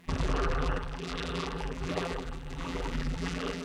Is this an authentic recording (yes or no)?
no